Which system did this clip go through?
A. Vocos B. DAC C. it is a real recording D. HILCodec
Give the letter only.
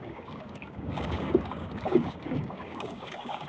B